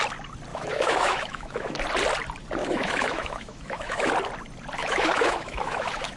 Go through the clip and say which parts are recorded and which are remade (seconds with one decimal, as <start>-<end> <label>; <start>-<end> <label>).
0.0-0.5 recorded; 0.5-1.8 remade; 1.8-2.6 recorded; 2.6-4.1 remade; 4.1-4.8 recorded; 4.8-6.2 remade